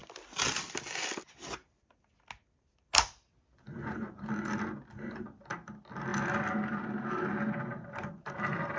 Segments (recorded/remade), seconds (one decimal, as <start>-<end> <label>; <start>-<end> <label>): 0.0-3.8 recorded; 3.8-4.3 remade; 4.3-8.8 recorded